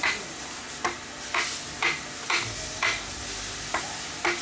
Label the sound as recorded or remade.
recorded